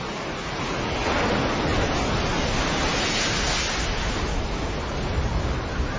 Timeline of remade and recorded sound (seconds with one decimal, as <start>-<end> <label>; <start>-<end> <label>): 0.0-6.0 recorded